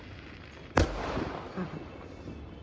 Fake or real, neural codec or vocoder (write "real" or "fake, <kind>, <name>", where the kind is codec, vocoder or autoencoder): real